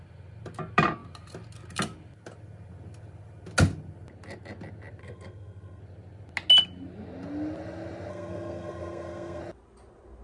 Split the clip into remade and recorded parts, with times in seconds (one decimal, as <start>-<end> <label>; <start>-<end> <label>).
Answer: 0.0-5.0 recorded; 5.0-5.8 remade; 5.8-8.1 recorded; 8.1-9.4 remade; 9.4-10.2 recorded